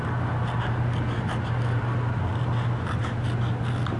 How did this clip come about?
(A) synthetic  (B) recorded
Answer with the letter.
B